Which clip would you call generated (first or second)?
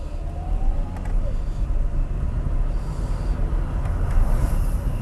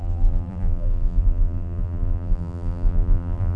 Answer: second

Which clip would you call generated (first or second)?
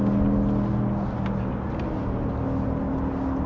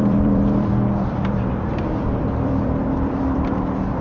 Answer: second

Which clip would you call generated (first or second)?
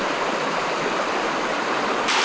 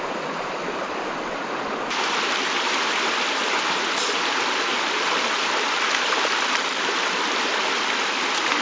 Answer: second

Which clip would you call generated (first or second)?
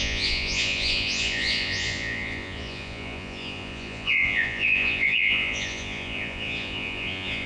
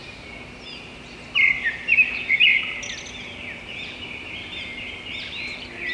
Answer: first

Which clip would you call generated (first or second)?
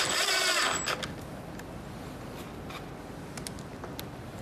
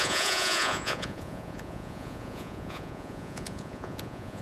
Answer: second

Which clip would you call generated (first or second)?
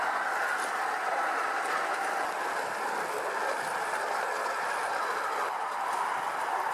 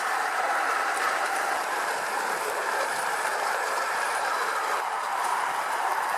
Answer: second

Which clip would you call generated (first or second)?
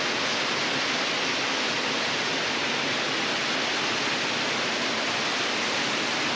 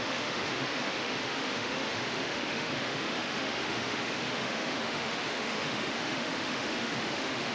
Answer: second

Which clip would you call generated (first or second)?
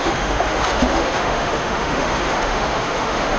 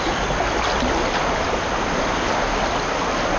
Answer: first